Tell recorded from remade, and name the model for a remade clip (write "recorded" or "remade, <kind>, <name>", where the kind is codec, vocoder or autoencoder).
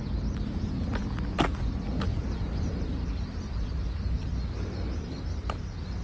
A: recorded